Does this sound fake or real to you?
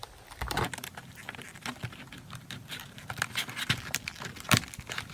real